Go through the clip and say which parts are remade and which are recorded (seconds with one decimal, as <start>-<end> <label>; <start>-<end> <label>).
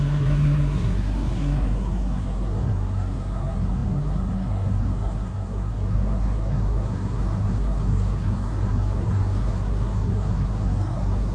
0.0-11.3 remade